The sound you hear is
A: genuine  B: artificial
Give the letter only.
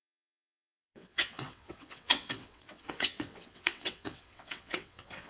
B